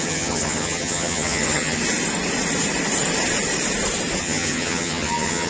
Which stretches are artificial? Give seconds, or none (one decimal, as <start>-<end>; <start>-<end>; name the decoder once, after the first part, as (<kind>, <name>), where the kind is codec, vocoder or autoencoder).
0.0-1.8 (vocoder, HiFi-GAN); 4.2-5.5